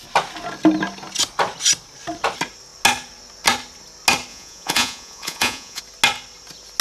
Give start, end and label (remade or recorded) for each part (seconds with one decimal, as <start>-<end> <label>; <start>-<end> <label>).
0.0-4.3 recorded; 4.3-5.8 remade; 5.8-6.8 recorded